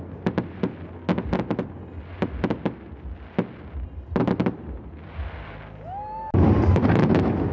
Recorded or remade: recorded